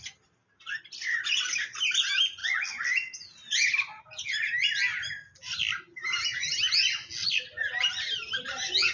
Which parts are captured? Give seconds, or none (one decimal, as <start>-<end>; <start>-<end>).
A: 0.0-8.9